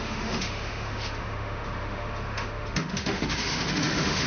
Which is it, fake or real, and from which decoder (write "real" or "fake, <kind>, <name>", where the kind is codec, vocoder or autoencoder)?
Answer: fake, autoencoder, DAC-VAE